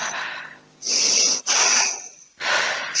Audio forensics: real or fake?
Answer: fake